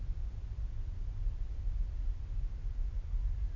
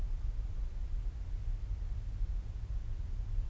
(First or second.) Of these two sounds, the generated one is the first